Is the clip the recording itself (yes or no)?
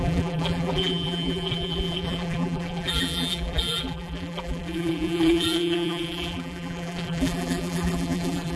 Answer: no